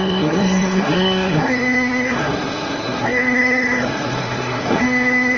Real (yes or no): no